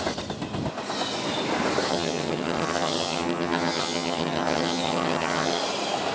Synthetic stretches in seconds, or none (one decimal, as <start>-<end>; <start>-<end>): 1.9-5.6

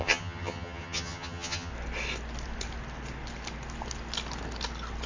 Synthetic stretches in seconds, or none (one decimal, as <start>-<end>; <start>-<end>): 0.0-1.7

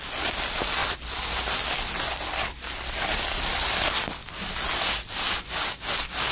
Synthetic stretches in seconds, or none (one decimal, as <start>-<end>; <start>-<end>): none

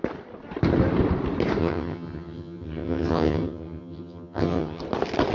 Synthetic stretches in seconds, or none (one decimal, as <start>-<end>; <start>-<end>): 1.6-4.8

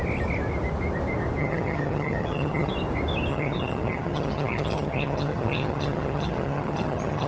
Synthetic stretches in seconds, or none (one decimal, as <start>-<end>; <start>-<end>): 1.4-2.7; 3.3-7.3

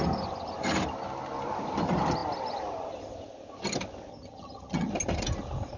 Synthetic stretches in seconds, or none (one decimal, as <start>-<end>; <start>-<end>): 4.1-4.9

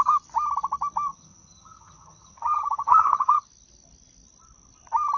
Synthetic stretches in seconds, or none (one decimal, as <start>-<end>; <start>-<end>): 1.1-3.4

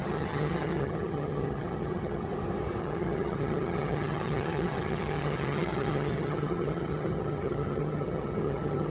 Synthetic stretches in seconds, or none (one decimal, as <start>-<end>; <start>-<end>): 0.0-2.3; 2.8-8.9